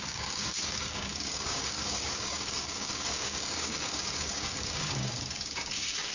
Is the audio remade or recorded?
remade